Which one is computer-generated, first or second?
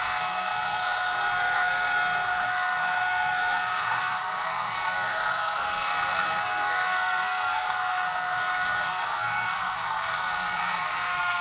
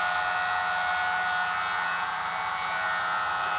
first